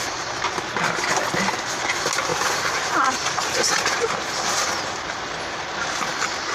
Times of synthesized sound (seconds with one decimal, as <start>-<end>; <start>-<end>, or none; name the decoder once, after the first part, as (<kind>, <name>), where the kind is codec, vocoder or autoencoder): 2.3-5.0 (vocoder, BigVGAN v2)